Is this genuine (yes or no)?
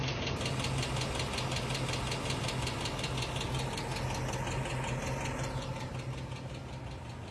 yes